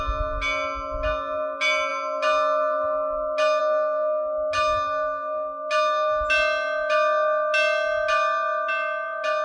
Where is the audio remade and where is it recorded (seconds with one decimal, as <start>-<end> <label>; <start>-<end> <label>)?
0.0-9.4 recorded